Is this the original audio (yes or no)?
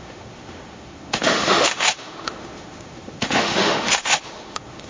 no